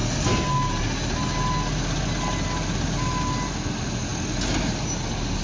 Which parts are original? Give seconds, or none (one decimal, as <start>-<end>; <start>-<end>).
0.0-5.4